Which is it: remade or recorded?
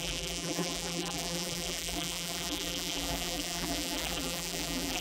remade